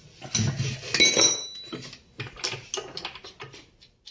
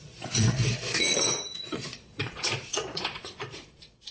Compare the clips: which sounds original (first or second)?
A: first